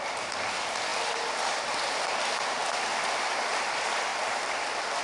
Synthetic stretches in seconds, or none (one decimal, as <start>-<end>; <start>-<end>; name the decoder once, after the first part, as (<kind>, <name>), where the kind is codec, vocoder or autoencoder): 0.9-1.5 (vocoder, BigVGAN v2); 4.1-5.0